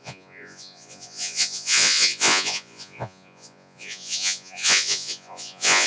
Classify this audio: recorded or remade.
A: remade